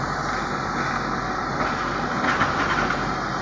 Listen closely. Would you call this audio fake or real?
real